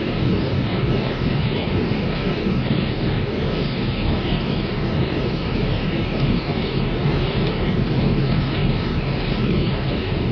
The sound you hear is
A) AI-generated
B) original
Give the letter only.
A